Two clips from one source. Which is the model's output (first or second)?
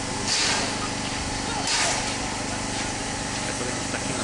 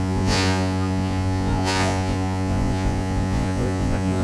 second